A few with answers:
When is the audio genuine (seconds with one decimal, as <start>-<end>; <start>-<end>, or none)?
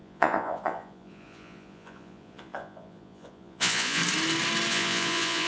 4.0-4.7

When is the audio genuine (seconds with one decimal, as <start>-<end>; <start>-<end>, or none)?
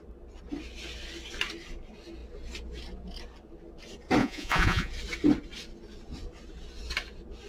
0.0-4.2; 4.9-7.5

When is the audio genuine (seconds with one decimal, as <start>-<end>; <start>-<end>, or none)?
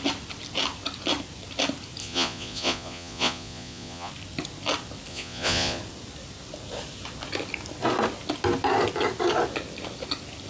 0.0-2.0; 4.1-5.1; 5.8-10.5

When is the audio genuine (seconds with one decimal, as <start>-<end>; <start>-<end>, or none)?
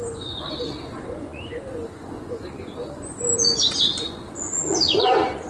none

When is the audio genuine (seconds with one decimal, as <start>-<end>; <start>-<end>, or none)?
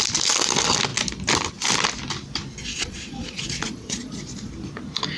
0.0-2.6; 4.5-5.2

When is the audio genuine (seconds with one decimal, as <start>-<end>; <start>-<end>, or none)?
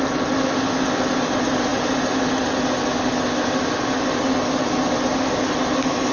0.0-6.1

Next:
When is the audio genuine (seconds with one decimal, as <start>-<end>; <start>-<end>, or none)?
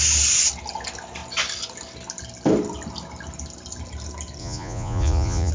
0.0-4.4